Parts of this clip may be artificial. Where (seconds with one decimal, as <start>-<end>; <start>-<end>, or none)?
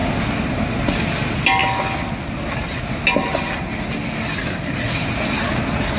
none